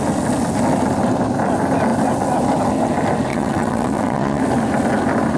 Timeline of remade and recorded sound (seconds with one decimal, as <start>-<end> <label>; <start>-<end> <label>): 0.0-3.3 recorded; 3.3-4.4 remade; 4.4-5.4 recorded